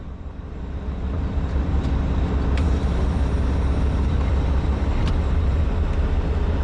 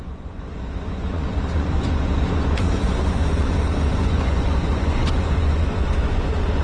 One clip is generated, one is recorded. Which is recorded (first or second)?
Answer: first